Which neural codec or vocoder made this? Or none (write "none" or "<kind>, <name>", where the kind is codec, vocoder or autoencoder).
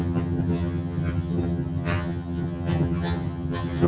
vocoder, HiFi-GAN